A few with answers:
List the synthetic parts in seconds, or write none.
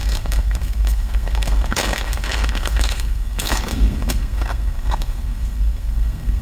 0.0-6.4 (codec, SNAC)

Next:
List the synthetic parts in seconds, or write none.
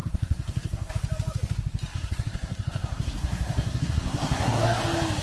0.0-0.9 (codec, SNAC); 1.9-4.8